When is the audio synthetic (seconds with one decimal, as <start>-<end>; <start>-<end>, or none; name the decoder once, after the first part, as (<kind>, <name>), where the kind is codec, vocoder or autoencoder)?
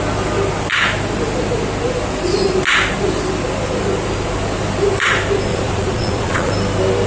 5.5-6.5 (vocoder, Vocos)